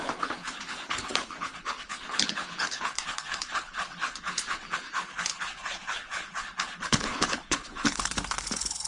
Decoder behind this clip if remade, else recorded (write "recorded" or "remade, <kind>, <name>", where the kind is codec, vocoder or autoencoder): remade, codec, HILCodec